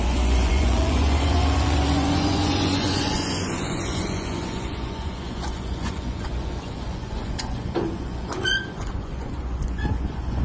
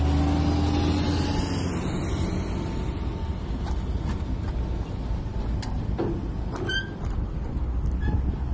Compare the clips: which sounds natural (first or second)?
second